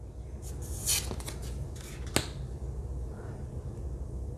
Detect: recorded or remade recorded